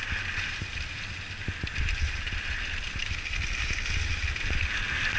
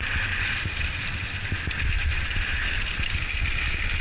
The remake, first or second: second